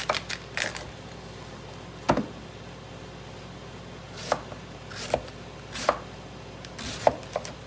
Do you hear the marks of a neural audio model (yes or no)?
no